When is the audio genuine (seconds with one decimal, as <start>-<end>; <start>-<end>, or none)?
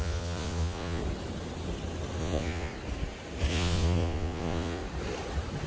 1.0-2.2; 2.7-3.5; 4.8-5.7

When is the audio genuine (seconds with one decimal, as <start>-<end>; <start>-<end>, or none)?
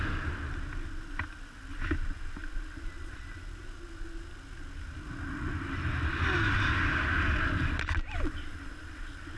0.0-9.4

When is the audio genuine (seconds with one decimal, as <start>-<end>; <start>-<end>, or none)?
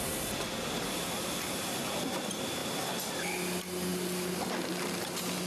0.0-5.5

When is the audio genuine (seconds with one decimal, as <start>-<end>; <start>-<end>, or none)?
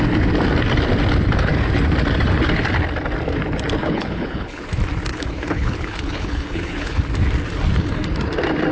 0.0-3.8; 4.6-5.1; 7.0-8.7